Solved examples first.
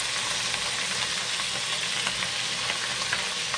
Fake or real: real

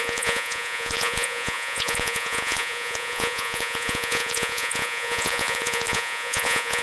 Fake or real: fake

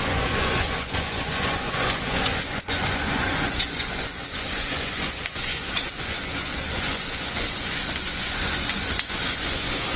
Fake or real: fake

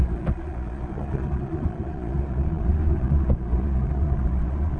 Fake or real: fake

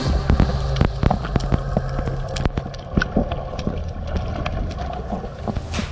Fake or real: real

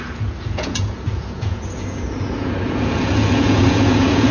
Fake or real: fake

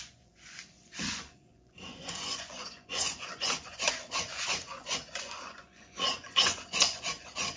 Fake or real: fake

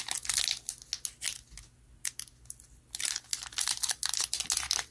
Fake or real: real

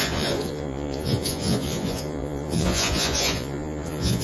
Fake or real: fake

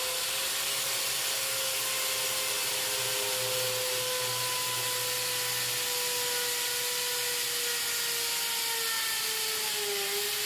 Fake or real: real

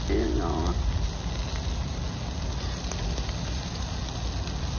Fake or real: real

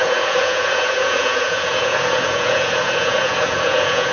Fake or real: fake